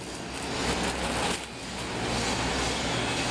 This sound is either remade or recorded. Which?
recorded